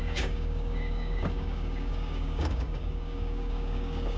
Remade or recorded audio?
remade